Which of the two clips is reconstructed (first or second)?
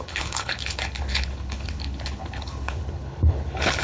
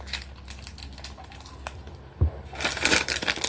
first